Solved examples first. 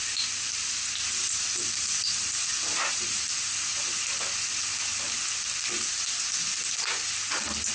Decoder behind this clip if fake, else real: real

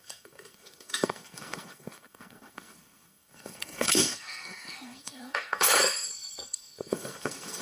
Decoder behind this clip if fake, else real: fake, codec, SNAC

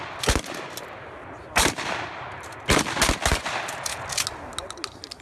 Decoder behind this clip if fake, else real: real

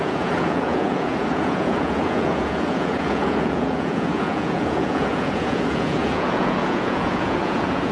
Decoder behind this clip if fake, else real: fake, vocoder, Vocos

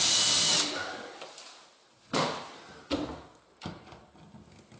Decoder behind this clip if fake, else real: real